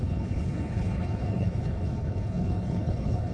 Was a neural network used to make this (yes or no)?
yes